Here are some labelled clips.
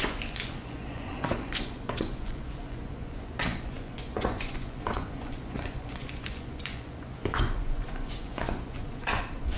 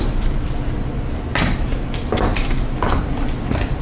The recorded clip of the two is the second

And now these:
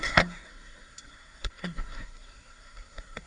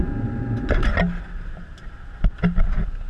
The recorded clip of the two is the second